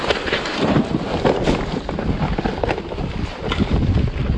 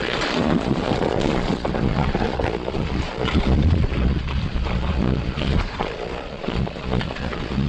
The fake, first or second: second